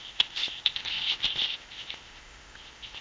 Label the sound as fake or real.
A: fake